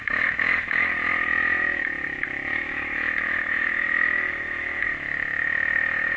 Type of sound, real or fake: fake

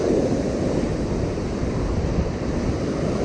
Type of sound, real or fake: real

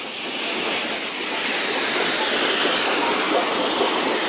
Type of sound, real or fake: real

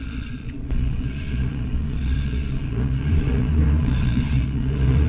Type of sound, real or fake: fake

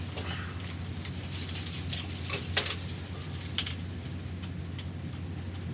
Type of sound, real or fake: real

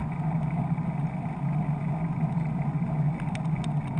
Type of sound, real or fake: real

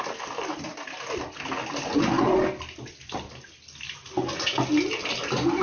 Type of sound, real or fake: real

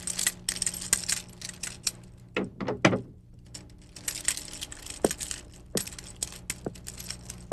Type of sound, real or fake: real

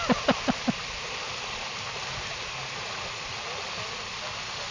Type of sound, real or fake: real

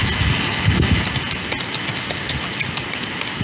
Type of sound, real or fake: real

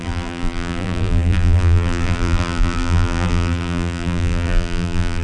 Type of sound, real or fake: fake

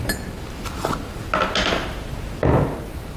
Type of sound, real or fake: real